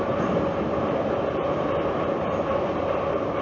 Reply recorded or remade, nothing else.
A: recorded